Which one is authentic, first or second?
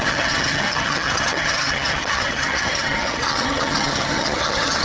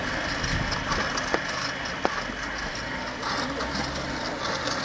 second